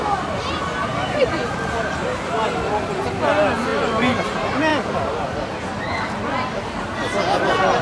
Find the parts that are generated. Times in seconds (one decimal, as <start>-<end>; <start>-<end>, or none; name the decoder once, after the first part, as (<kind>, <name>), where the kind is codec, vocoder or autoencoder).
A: none